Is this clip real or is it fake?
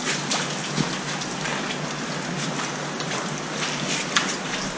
real